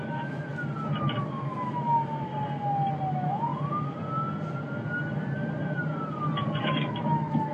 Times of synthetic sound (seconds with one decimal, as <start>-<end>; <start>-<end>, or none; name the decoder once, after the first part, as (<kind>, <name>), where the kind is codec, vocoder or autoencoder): 0.0-0.5 (autoencoder, DAC-VAE); 1.3-2.3; 3.1-3.5; 6.6-7.5